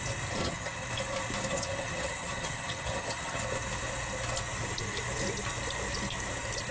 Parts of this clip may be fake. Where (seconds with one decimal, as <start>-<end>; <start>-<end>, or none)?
0.4-0.9; 1.5-3.4